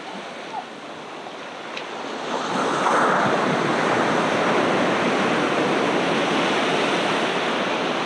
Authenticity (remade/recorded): recorded